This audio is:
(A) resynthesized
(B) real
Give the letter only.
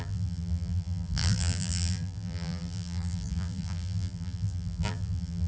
A